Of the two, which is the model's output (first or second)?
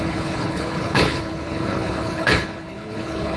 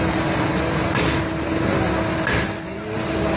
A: first